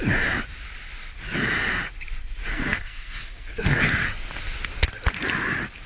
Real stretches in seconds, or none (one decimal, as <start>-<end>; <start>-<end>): 0.0-2.5; 3.8-5.9